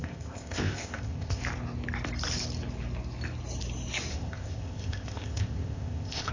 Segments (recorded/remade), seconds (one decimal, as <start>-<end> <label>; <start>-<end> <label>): 0.0-1.4 remade; 1.4-4.1 recorded; 4.1-6.3 remade